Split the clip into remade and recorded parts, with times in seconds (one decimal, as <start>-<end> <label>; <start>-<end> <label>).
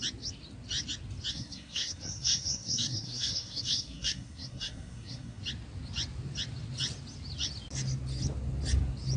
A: 0.0-1.3 recorded; 1.3-5.4 remade; 5.4-9.2 recorded